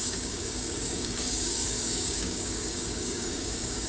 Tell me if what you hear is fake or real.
fake